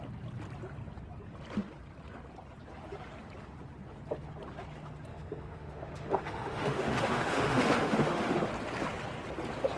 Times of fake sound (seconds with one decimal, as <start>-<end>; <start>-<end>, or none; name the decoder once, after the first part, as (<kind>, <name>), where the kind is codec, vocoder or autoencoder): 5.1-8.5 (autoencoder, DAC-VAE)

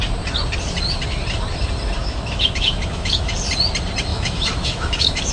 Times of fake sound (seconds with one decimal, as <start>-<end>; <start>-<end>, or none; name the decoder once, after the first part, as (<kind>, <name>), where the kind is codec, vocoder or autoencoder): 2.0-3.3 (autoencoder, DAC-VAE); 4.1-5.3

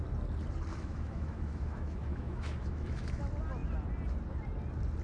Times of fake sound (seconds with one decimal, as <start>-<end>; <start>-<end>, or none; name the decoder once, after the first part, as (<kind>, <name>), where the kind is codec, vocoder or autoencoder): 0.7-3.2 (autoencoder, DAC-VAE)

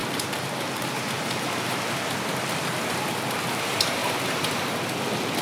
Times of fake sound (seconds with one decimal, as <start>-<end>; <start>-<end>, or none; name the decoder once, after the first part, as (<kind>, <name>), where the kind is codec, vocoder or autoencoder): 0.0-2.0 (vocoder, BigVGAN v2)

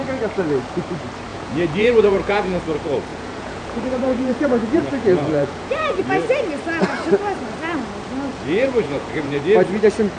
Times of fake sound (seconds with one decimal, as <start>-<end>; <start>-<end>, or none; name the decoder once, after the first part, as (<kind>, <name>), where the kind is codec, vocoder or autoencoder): 1.3-2.6 (vocoder, Vocos); 3.1-6.0; 8.3-9.4

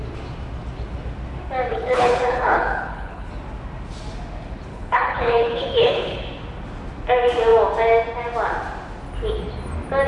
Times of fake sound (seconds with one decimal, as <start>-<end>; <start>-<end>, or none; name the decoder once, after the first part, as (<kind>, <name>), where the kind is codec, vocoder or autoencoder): 1.7-3.3 (codec, HILCodec); 4.7-6.2

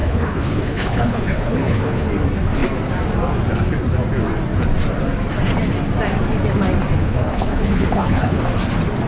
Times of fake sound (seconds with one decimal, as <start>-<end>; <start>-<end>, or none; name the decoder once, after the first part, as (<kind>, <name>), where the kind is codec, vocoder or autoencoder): 0.0-2.1 (codec, HILCodec); 7.0-8.4

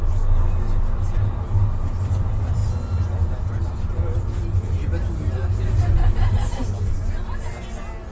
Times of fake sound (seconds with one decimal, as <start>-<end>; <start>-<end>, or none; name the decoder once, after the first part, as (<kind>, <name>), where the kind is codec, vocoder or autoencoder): none